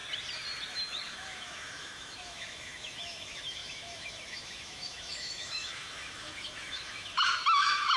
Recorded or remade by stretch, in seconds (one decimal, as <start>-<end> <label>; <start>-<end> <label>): 0.0-1.1 recorded; 1.1-8.0 remade